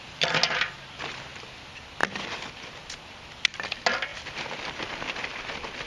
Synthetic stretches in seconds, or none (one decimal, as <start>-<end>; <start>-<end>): none